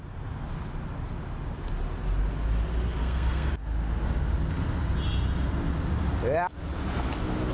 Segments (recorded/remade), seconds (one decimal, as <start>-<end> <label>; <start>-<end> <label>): 0.0-3.0 recorded; 3.0-3.5 remade; 3.5-7.5 recorded